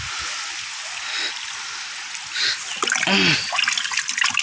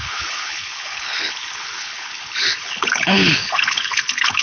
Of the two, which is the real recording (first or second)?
first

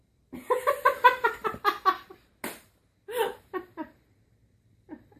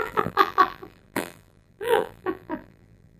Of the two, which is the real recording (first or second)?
first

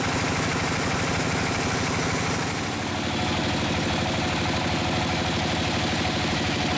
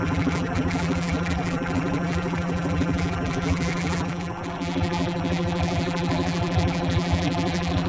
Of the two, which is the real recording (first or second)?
first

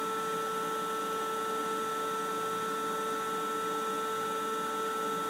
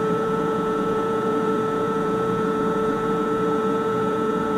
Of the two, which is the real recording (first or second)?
first